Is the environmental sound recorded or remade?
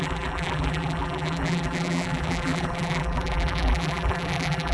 remade